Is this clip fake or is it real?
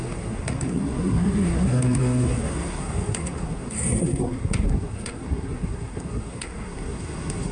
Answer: fake